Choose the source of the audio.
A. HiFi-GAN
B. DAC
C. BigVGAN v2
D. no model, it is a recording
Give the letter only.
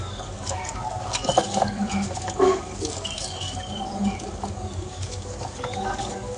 B